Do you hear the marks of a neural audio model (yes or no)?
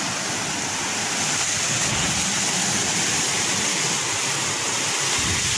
no